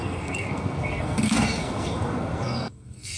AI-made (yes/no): yes